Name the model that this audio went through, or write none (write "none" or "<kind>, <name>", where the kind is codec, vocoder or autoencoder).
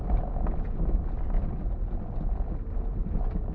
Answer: none